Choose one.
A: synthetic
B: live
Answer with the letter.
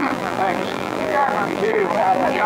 A